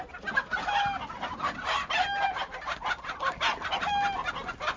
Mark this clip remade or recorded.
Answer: recorded